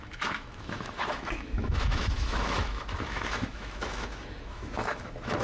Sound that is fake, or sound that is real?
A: fake